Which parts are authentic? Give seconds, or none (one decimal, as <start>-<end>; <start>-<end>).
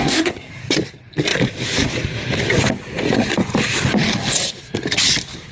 0.5-5.5